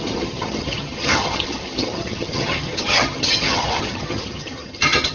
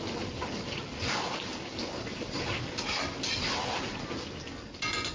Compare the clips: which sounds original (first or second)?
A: second